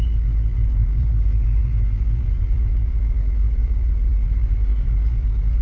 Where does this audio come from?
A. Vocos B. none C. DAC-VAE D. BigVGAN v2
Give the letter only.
D